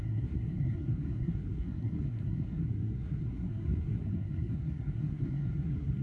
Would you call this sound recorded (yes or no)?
no